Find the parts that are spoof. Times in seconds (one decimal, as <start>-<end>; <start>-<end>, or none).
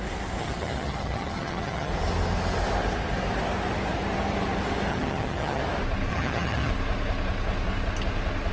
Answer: 0.4-1.9; 4.9-5.6; 6.1-6.7